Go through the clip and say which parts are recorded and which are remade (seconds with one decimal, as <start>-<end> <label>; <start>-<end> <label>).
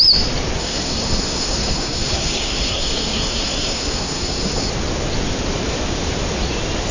0.0-0.6 recorded; 0.6-4.7 remade; 4.7-6.9 recorded